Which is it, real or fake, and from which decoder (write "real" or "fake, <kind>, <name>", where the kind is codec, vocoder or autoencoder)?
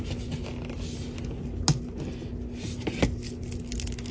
real